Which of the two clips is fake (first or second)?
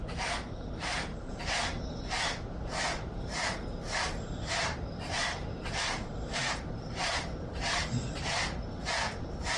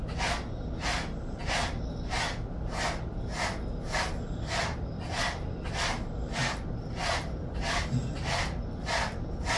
first